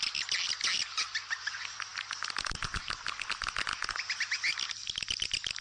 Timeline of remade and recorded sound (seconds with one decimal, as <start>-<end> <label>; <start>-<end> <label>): 0.0-5.6 recorded